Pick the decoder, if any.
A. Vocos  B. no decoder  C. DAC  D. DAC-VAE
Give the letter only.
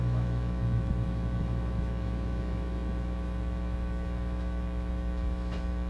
D